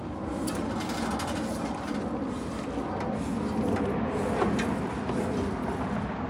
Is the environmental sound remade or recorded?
recorded